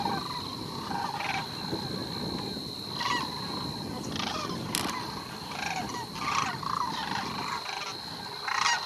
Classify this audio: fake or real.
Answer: real